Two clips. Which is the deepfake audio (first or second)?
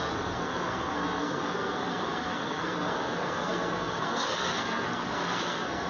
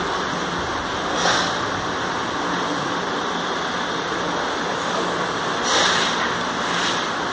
first